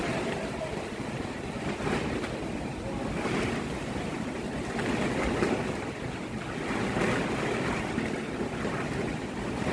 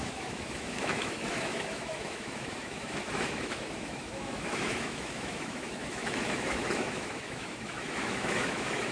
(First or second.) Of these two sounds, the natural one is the first